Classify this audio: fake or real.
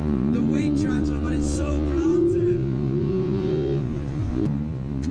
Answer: fake